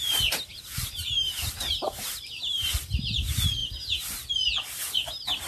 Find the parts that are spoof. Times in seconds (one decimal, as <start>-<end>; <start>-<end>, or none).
0.5-2.9